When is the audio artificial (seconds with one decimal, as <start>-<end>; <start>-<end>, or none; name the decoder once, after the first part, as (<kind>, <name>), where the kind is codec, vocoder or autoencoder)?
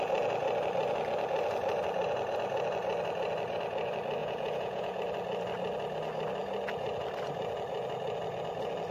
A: 4.2-5.0 (vocoder, Vocos)